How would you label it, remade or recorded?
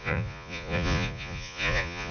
remade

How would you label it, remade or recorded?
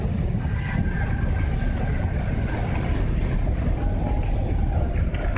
recorded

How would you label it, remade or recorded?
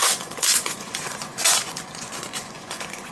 remade